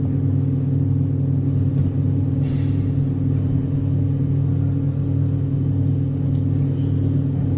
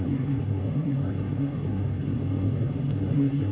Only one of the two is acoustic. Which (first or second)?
first